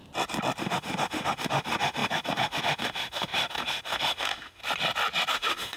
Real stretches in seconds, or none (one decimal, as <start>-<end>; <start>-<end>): 0.0-0.6; 4.6-5.3